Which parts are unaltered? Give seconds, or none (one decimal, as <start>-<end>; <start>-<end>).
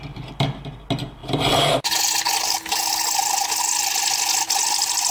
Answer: 0.0-5.1